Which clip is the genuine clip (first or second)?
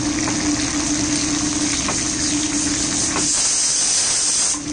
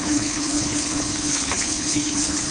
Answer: first